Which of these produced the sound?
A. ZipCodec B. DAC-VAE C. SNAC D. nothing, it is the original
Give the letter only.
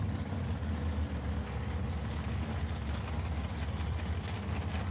D